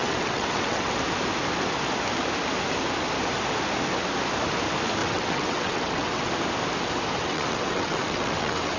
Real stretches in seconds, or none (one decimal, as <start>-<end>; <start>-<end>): 0.9-5.0; 6.3-7.2

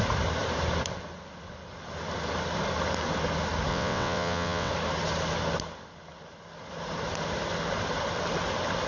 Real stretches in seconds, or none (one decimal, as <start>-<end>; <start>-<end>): 0.0-3.7; 4.7-8.9